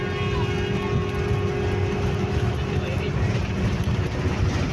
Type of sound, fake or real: real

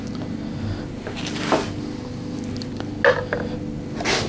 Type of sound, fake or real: real